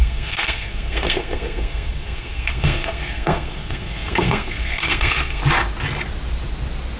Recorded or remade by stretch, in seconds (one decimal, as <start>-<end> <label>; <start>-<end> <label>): 0.0-5.4 remade; 5.4-7.0 recorded